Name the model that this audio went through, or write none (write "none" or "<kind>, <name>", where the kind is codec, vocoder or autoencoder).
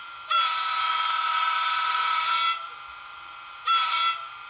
vocoder, BigVGAN v2